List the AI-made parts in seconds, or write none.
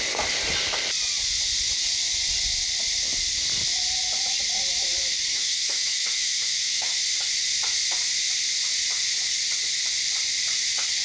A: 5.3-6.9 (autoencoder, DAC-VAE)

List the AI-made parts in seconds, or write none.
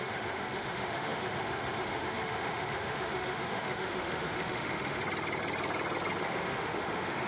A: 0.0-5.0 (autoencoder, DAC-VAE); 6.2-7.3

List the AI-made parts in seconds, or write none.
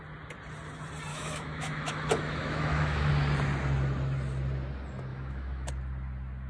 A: 1.1-3.1 (autoencoder, DAC-VAE); 5.1-5.7